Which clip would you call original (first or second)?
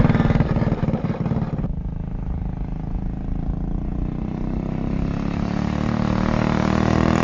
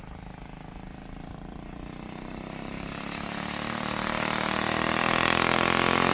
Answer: first